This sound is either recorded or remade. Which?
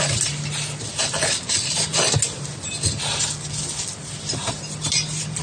recorded